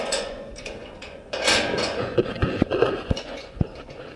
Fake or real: fake